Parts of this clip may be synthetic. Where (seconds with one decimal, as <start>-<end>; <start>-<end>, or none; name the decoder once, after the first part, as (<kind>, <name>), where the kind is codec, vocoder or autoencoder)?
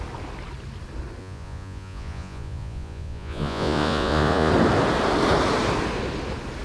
1.2-4.5 (vocoder, Vocos)